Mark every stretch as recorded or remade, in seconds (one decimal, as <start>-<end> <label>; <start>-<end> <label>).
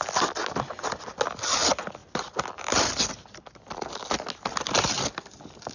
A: 0.0-5.7 recorded